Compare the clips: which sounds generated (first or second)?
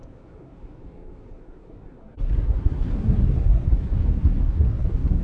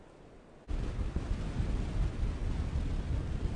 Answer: first